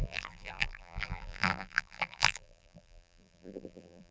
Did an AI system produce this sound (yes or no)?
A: yes